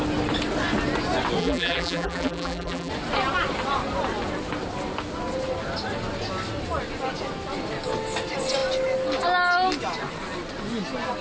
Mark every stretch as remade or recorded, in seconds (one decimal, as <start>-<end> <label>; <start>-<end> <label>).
0.0-1.4 recorded; 1.4-2.9 remade; 2.9-11.2 recorded